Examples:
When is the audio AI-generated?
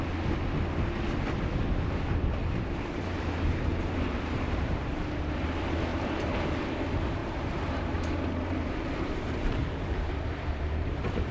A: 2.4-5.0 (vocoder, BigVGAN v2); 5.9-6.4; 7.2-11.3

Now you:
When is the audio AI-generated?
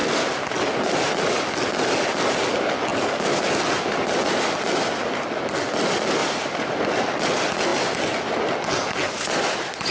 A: 2.9-3.5 (vocoder, BigVGAN v2); 6.2-6.8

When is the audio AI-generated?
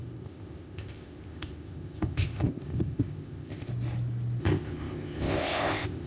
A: 0.0-3.7 (codec, ZipCodec); 4.4-6.1